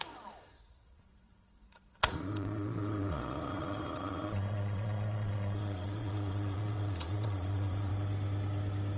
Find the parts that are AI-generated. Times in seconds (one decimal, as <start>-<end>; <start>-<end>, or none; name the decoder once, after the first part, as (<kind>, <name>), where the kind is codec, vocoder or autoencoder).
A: 0.0-7.9 (vocoder, Vocos)